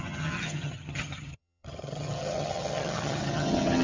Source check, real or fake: fake